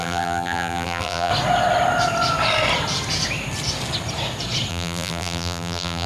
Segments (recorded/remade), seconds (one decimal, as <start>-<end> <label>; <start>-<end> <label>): 0.0-1.3 remade; 1.3-4.7 recorded; 4.7-6.1 remade